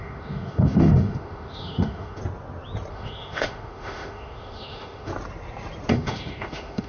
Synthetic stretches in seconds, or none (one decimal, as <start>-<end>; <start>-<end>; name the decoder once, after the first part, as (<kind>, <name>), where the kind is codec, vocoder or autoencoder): 0.0-2.2 (autoencoder, DAC-VAE); 2.9-5.1; 5.9-6.9